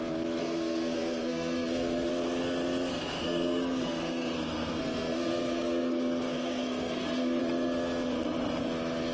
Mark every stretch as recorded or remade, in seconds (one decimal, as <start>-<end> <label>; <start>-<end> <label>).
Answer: 0.0-0.4 recorded; 0.4-2.1 remade; 2.1-2.9 recorded; 2.9-7.4 remade; 7.4-9.1 recorded